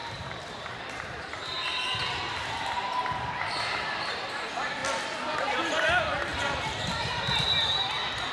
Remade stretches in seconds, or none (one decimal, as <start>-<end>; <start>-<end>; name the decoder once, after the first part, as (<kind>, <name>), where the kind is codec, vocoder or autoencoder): 0.0-4.8 (vocoder, BigVGAN v2); 5.4-8.3